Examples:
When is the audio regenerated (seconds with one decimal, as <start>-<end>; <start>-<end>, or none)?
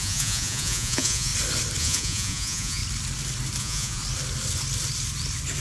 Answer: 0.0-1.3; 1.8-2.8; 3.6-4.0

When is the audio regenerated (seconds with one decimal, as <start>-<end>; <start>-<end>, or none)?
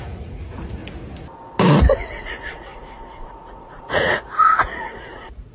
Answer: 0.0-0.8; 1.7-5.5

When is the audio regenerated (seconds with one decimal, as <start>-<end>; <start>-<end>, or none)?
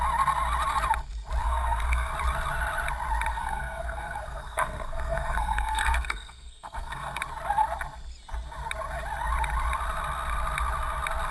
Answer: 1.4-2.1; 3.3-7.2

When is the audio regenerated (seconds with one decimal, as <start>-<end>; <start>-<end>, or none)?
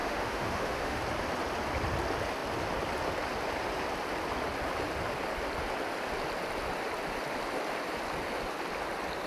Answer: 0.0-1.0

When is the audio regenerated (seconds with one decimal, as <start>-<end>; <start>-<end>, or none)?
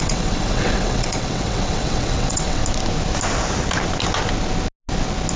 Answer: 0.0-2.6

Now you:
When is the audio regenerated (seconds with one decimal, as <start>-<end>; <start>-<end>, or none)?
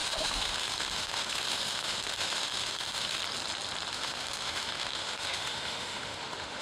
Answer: 0.0-3.2; 3.9-6.6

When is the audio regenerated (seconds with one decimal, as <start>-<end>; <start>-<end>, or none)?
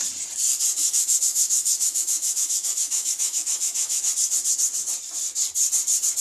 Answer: 0.8-4.1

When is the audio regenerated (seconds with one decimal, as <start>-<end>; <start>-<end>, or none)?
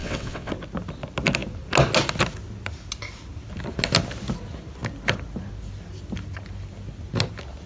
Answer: 0.0-0.5